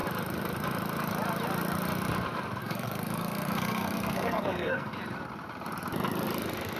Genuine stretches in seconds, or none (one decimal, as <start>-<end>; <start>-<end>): 0.0-2.6; 4.9-6.8